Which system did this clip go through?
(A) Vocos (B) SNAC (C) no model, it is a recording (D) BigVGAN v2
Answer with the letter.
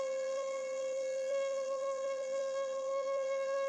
D